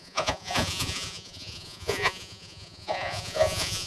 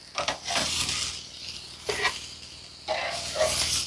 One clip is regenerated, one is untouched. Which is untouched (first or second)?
second